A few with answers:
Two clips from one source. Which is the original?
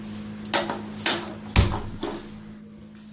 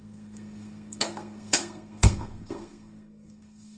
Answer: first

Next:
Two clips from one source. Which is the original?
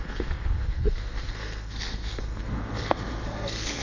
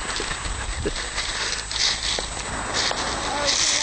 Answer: second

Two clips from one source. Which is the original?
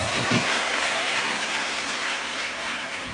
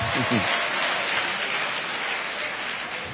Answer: second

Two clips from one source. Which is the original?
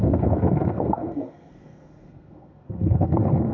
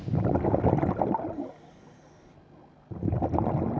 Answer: second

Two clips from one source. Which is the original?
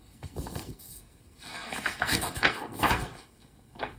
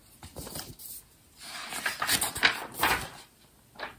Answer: second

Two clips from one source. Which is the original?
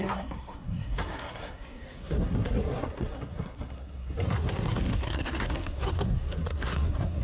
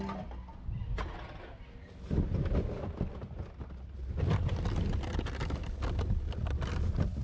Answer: second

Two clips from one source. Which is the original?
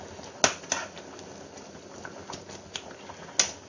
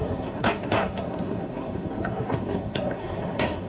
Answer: first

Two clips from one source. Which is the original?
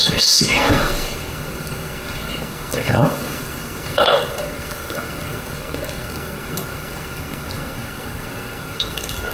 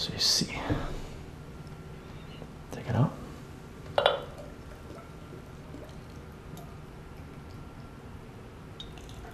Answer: second